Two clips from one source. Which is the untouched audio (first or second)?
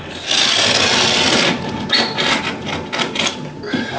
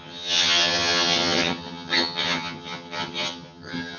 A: first